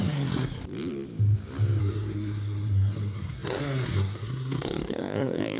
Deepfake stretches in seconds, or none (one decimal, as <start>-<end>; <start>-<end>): 0.0-0.6; 1.8-5.6